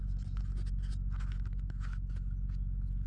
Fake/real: real